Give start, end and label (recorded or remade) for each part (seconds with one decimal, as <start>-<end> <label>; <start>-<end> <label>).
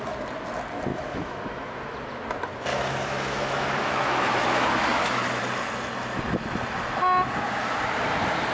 0.0-0.9 recorded; 0.9-1.8 remade; 1.8-2.7 recorded; 2.7-5.4 remade; 5.4-8.5 recorded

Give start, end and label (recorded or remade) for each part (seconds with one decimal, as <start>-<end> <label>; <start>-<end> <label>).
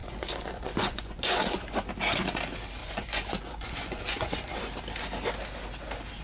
0.0-1.9 remade; 1.9-2.8 recorded; 2.8-4.6 remade; 4.6-6.2 recorded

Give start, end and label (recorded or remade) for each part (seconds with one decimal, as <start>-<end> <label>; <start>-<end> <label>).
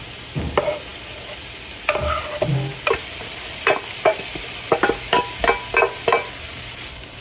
0.0-7.2 recorded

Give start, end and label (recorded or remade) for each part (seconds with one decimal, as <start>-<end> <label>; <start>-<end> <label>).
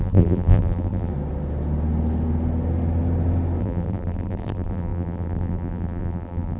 0.0-1.1 remade; 1.1-3.6 recorded; 3.6-6.6 remade